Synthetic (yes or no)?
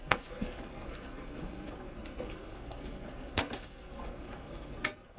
yes